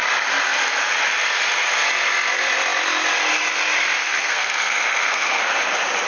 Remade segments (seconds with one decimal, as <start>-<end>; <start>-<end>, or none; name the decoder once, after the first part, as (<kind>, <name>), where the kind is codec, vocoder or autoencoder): 4.0-5.4 (codec, SNAC)